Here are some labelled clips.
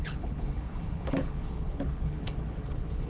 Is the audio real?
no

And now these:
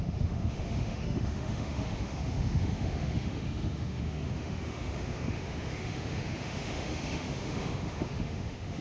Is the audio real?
no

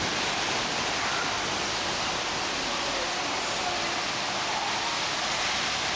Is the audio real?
yes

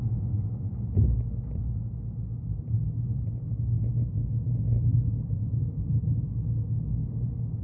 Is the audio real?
yes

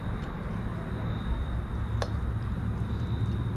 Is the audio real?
yes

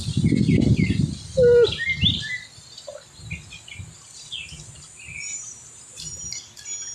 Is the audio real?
yes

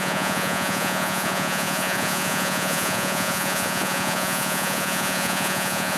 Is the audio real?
no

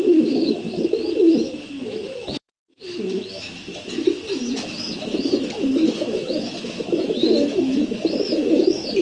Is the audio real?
no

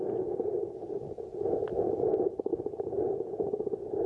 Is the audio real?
yes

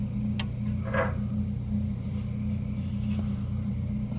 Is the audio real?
yes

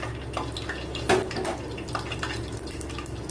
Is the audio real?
yes